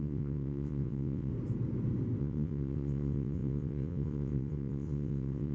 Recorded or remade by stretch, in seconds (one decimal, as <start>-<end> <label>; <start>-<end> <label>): 0.0-1.3 remade; 1.3-2.2 recorded; 2.2-5.5 remade